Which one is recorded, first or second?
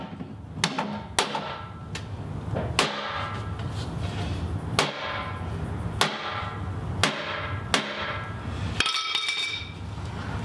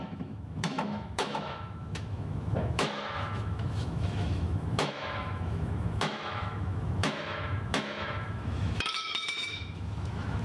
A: first